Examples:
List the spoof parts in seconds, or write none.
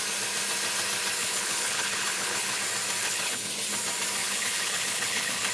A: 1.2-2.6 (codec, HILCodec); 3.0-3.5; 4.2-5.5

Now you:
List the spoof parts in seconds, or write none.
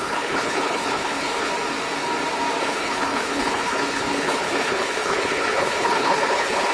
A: 0.0-1.5 (codec, HILCodec); 2.6-6.7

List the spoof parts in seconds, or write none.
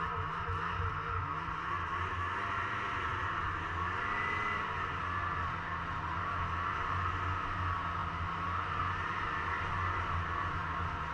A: none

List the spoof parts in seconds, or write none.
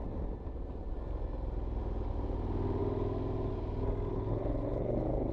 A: 4.1-5.3 (codec, HILCodec)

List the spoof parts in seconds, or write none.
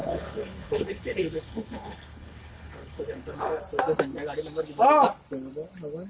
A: 0.0-3.6 (codec, HILCodec)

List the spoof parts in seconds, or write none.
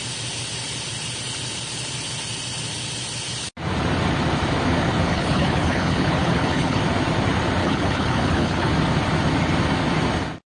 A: 5.1-6.8 (codec, HILCodec); 7.6-8.7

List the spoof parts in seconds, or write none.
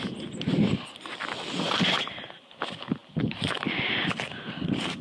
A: none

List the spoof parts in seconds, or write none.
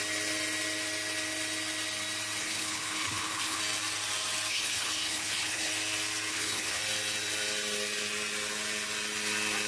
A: 2.4-3.6 (codec, HILCodec); 4.5-5.7; 6.3-6.8